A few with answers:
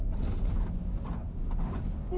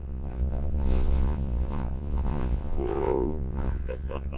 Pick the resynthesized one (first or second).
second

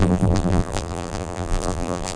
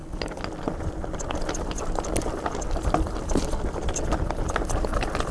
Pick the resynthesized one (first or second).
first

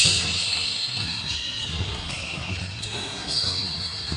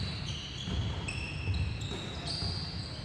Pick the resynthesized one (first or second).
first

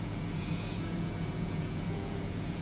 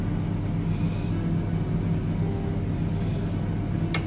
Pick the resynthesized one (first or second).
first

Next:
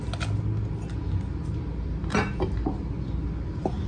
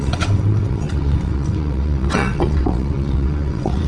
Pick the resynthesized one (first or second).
second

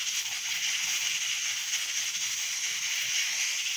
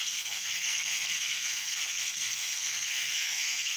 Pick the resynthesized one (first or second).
second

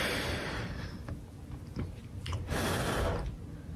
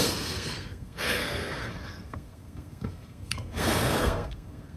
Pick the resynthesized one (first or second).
second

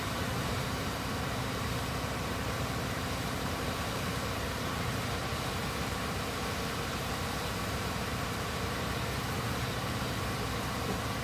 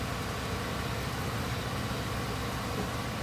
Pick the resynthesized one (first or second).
first